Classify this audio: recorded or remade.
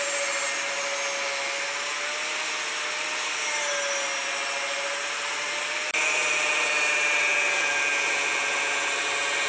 recorded